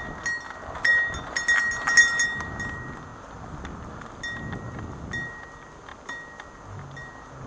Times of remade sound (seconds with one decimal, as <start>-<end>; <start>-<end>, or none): none